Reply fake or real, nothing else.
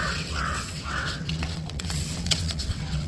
fake